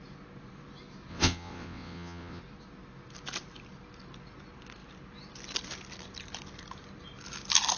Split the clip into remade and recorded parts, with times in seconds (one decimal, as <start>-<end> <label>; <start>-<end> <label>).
0.0-1.1 recorded; 1.1-2.4 remade; 2.4-7.8 recorded